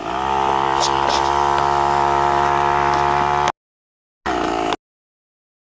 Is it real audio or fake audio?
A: real